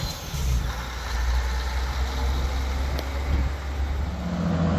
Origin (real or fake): real